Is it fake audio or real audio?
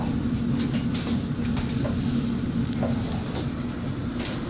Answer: real